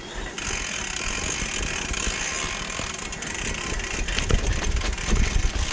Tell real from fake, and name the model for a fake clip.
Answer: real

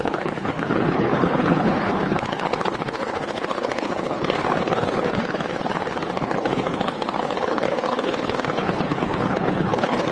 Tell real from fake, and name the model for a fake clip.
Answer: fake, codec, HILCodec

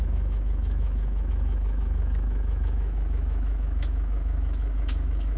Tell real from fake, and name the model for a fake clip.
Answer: fake, autoencoder, DAC-VAE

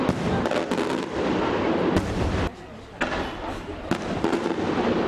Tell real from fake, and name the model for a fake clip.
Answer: real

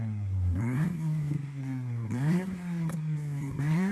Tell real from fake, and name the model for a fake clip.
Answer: fake, codec, SNAC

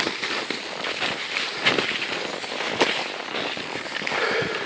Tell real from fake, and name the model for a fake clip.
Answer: real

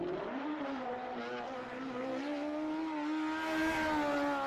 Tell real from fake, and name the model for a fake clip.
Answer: real